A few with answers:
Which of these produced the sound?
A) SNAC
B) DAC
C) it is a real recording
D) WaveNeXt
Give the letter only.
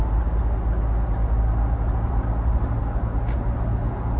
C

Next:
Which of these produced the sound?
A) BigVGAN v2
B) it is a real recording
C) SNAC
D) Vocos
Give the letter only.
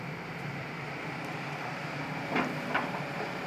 A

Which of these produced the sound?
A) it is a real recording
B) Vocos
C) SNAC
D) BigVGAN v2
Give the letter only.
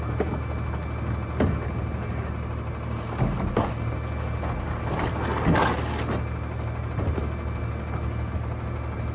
A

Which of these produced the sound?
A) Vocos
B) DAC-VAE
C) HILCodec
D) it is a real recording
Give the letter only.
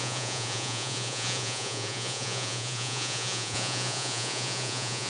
A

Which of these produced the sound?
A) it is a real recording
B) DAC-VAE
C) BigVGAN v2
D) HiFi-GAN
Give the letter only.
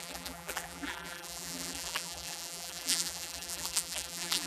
C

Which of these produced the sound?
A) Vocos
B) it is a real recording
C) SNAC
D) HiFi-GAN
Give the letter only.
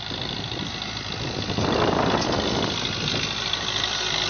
B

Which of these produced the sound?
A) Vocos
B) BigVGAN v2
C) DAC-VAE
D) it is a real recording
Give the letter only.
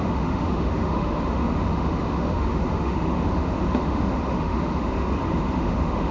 C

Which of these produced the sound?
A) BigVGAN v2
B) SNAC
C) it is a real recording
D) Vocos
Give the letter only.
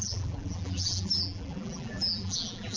A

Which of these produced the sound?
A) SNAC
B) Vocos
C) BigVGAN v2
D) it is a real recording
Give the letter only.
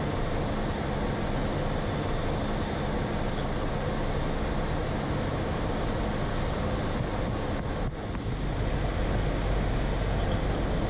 D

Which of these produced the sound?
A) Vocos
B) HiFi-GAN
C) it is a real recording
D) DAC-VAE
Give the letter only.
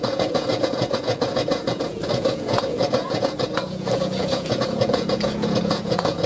A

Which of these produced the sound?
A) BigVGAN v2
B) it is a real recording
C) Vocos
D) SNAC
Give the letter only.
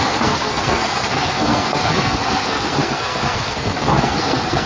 D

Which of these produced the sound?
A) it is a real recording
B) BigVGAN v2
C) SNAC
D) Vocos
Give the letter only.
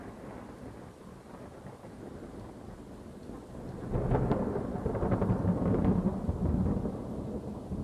A